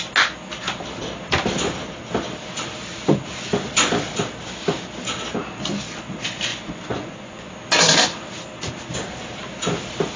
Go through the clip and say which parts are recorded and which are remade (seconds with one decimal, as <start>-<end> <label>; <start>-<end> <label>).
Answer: 0.0-6.5 recorded; 6.5-7.5 remade; 7.5-10.2 recorded